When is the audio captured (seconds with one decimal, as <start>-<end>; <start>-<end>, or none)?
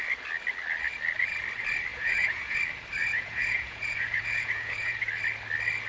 0.0-1.9; 2.6-3.0; 5.1-5.9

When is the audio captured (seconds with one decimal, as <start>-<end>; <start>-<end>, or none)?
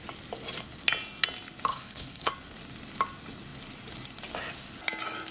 0.0-1.7; 2.3-5.3